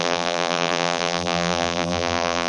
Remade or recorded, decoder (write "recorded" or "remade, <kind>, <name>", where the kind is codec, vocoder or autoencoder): remade, vocoder, BigVGAN v2